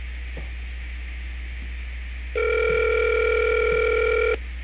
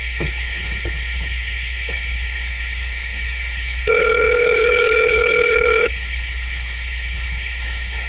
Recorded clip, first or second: first